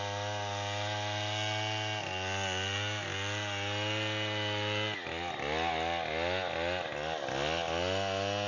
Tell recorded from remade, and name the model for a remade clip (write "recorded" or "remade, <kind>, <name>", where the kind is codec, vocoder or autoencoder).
recorded